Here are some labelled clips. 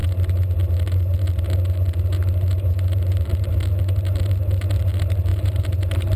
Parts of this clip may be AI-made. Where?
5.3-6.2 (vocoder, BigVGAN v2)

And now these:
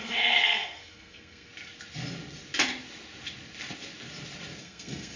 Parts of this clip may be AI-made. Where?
0.0-1.5 (codec, SNAC); 4.6-5.2

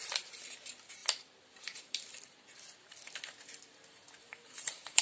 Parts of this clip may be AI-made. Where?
4.2-5.0 (vocoder, BigVGAN v2)

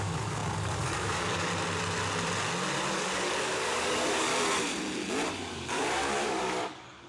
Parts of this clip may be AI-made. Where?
0.0-1.5 (codec, DAC); 2.9-4.3; 5.3-7.1

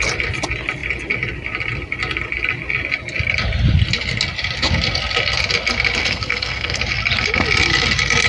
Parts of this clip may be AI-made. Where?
6.0-6.8 (codec, SNAC)

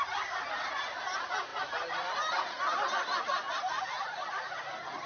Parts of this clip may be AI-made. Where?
none

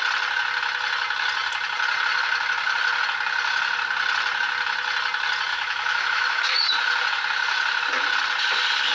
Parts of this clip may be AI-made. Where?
5.5-6.4 (autoencoder, DAC-VAE)